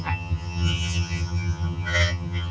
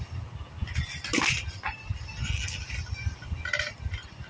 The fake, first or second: first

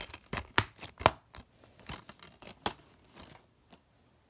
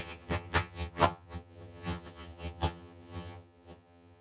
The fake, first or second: second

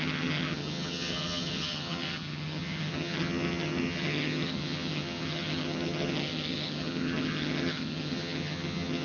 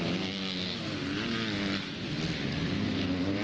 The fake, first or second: first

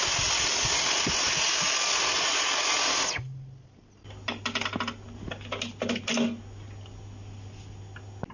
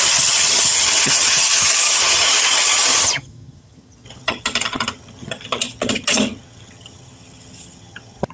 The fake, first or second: second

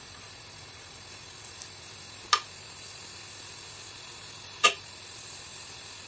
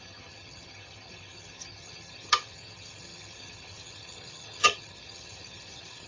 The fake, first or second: second